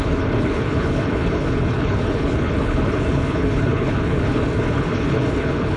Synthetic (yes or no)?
yes